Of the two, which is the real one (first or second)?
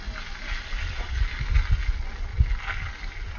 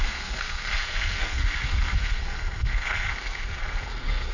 first